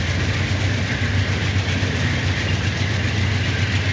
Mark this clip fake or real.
real